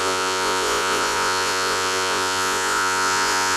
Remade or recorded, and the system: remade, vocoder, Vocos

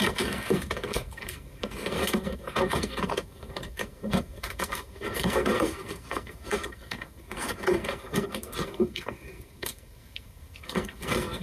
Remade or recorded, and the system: remade, codec, SNAC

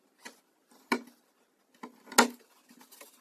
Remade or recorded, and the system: recorded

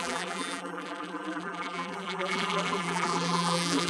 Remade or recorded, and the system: remade, vocoder, BigVGAN v2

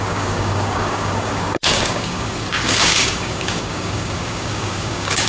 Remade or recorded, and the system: remade, codec, DAC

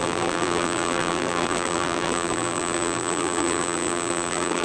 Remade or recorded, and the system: remade, vocoder, BigVGAN v2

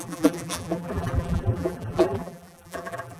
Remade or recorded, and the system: remade, vocoder, BigVGAN v2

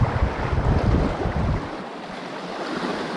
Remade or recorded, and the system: recorded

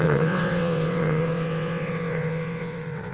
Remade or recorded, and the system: remade, vocoder, WaveNeXt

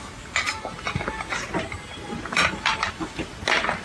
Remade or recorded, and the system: recorded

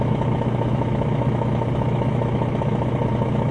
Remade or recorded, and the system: remade, autoencoder, DAC-VAE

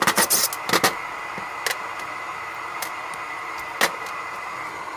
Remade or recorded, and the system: recorded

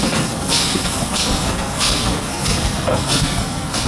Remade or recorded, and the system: remade, codec, SNAC